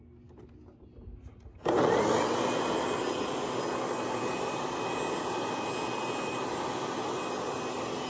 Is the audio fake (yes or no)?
no